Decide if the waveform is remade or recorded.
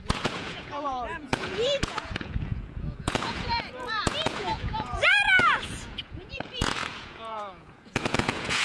remade